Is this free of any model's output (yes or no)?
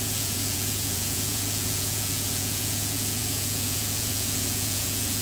no